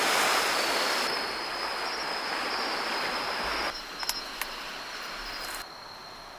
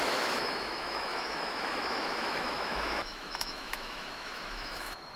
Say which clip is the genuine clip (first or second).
first